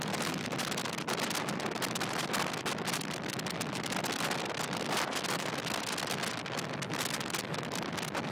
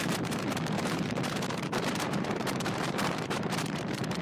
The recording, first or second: first